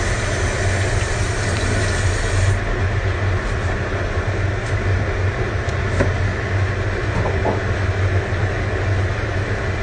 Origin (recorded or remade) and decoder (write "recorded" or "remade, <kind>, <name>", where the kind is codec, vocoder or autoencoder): recorded